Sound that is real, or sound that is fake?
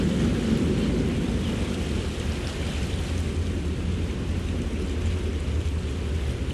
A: real